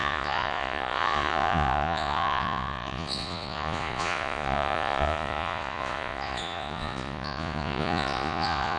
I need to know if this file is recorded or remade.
remade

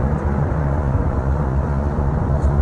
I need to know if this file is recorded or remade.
remade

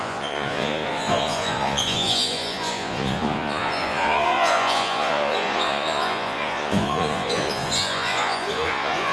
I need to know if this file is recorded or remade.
remade